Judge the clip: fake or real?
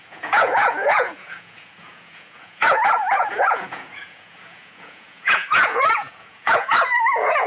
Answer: fake